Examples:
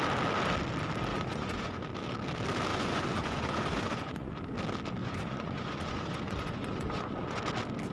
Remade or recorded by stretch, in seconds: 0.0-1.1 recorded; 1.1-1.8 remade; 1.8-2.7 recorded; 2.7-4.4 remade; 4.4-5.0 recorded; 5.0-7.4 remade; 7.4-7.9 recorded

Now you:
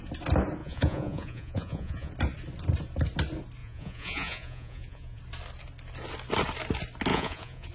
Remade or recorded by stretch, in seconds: 0.0-0.6 recorded; 0.6-2.1 remade; 2.1-3.6 recorded; 3.6-5.2 remade; 5.2-7.1 recorded; 7.1-7.7 remade

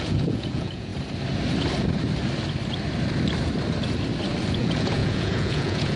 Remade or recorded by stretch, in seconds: 0.0-0.9 remade; 0.9-4.5 recorded; 4.5-6.0 remade